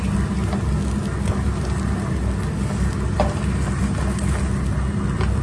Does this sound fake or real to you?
real